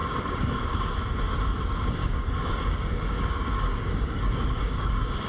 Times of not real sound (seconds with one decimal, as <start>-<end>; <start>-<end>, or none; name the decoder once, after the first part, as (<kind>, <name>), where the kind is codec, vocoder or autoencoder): 2.0-5.3 (codec, DAC)